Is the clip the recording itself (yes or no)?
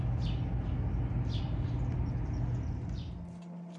yes